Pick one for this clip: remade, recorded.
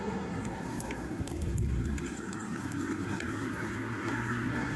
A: remade